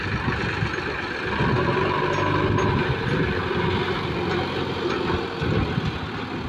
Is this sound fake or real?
real